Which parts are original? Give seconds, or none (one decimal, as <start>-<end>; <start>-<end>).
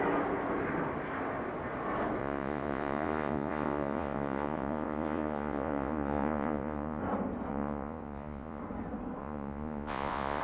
0.0-2.2; 7.0-7.5; 8.6-9.2